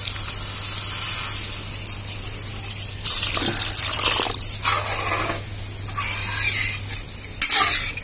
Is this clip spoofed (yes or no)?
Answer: no